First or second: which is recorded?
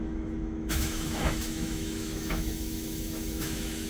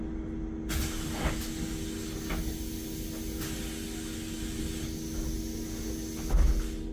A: second